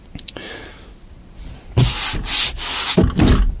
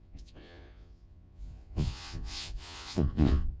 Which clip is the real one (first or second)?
first